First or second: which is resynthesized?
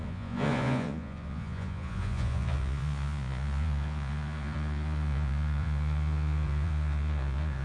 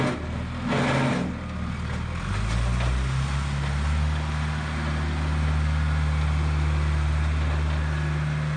first